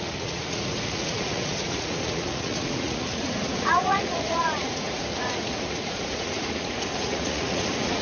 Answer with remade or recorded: remade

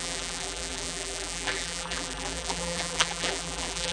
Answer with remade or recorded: remade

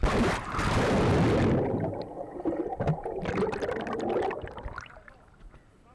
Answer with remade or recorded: recorded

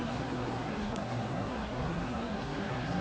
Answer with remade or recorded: remade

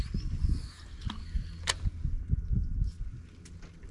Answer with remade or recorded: recorded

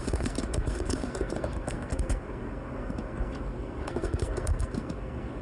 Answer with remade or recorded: remade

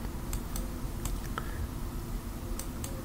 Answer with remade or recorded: recorded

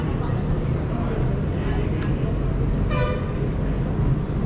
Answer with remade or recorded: recorded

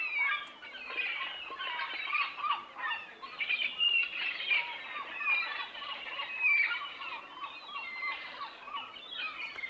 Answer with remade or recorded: recorded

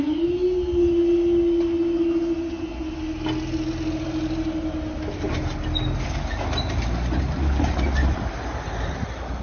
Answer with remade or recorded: recorded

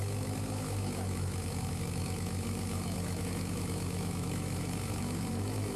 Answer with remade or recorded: remade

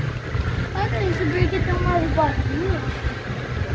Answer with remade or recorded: recorded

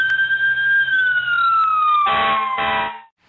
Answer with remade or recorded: recorded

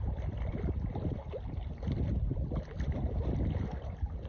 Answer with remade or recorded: remade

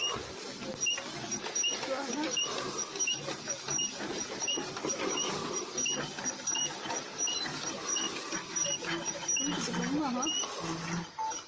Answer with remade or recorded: recorded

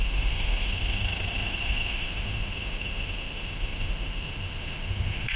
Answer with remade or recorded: remade